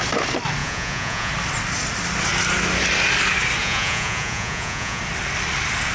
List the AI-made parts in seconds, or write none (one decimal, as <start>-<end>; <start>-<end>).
0.6-1.3; 3.6-5.0